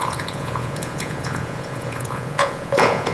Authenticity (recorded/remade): remade